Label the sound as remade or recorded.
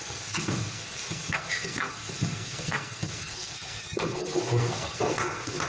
remade